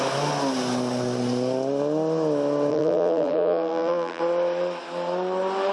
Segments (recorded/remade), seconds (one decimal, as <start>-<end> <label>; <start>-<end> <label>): 0.0-2.7 recorded; 2.7-4.2 remade; 4.2-5.7 recorded